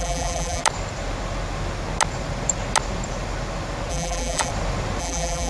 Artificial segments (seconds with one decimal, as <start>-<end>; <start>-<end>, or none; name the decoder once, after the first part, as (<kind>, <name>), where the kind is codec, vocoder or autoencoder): 0.0-0.6 (vocoder, BigVGAN v2); 3.9-4.5; 5.0-5.5